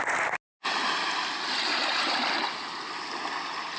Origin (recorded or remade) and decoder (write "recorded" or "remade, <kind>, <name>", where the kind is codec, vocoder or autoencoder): recorded